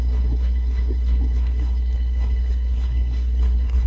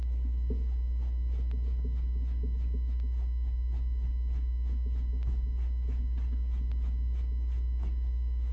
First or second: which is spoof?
first